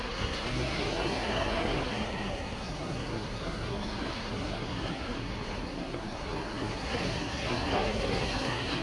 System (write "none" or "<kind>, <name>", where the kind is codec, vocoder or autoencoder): codec, SNAC